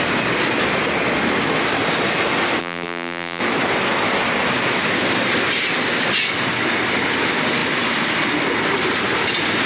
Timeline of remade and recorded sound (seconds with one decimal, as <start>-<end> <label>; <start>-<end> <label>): 0.0-2.6 recorded; 2.6-3.4 remade; 3.4-9.7 recorded